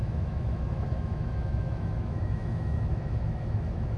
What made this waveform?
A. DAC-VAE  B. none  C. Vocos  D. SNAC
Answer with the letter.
A